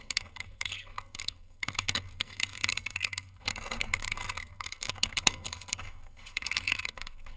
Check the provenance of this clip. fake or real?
fake